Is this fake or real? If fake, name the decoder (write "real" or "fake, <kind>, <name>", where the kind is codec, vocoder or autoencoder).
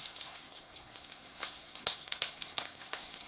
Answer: fake, codec, SNAC